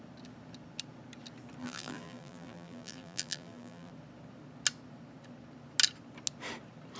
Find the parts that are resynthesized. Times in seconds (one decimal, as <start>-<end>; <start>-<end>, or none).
1.6-3.9